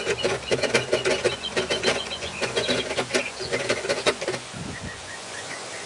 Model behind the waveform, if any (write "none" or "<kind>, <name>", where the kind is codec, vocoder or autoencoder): vocoder, Vocos